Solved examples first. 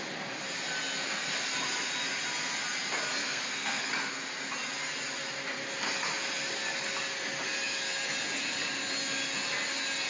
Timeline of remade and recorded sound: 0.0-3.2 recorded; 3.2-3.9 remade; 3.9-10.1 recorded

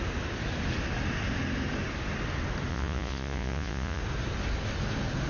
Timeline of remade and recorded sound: 0.0-2.7 recorded; 2.7-4.0 remade; 4.0-5.3 recorded

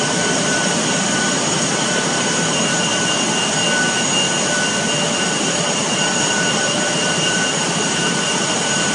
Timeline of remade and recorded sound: 0.0-2.9 remade; 2.9-5.4 recorded; 5.4-8.9 remade

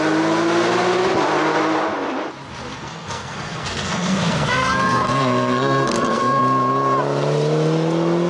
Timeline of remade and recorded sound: 0.0-2.7 recorded; 2.7-6.4 remade; 6.4-8.3 recorded

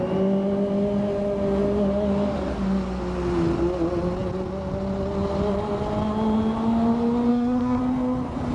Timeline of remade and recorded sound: 0.0-7.3 recorded; 7.3-7.8 remade; 7.8-8.5 recorded

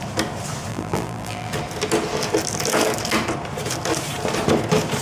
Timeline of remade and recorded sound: 0.0-0.7 recorded; 0.7-1.5 remade; 1.5-5.0 recorded